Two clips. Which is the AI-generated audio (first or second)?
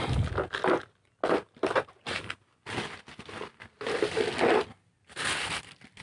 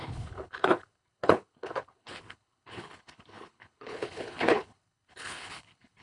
second